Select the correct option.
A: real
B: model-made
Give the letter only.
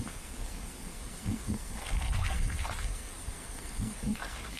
B